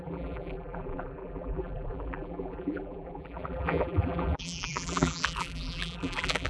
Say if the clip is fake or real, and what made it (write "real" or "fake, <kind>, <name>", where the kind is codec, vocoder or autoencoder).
fake, vocoder, BigVGAN v2